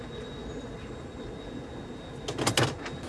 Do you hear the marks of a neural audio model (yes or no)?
no